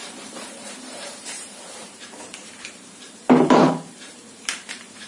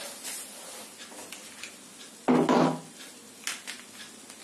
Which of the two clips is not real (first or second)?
first